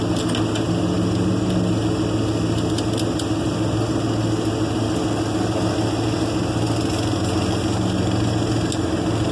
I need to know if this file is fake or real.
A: real